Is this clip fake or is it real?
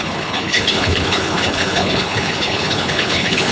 fake